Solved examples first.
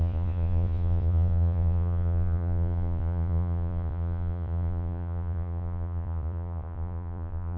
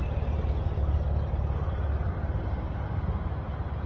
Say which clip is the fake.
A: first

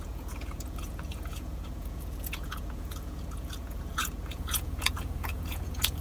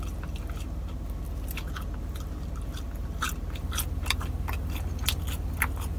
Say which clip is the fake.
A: first